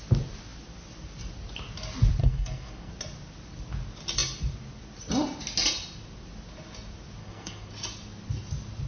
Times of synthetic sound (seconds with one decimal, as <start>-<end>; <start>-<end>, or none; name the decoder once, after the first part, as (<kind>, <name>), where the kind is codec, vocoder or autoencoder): 2.2-2.9 (codec, SNAC); 7.2-7.7